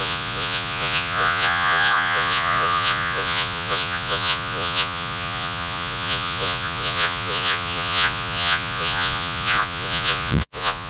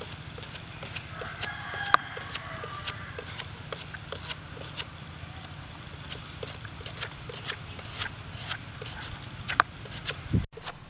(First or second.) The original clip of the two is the second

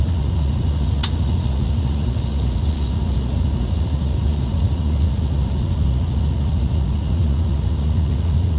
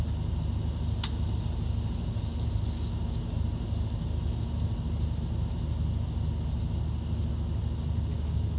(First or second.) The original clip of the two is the second